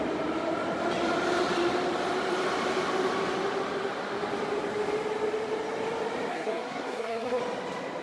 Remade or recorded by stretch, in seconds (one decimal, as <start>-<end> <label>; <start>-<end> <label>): 0.0-6.3 recorded; 6.3-7.4 remade; 7.4-8.0 recorded